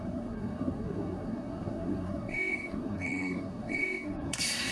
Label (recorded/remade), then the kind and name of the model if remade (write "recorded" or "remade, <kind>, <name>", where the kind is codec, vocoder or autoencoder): remade, codec, SNAC